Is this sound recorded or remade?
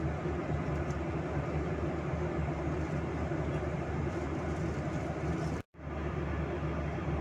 recorded